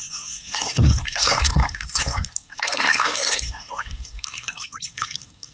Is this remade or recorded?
remade